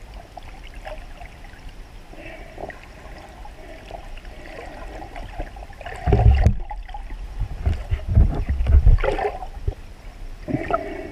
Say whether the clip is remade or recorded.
recorded